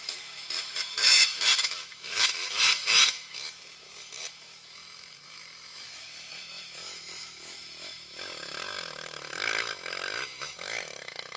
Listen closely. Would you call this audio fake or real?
fake